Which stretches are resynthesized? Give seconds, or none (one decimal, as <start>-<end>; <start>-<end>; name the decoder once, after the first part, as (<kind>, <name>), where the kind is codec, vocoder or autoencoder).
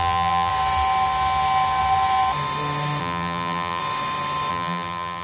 0.0-0.5 (vocoder, BigVGAN v2); 3.0-3.8; 4.5-5.2